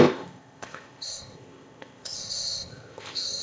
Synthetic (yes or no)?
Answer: yes